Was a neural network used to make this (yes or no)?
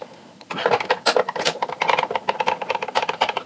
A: no